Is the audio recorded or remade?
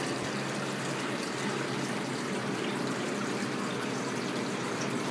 recorded